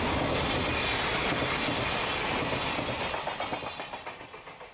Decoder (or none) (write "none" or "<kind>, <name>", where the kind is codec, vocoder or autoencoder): none